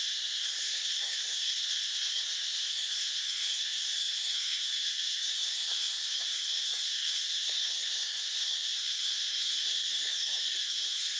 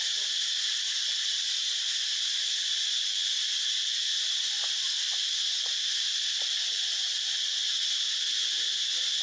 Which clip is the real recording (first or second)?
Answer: second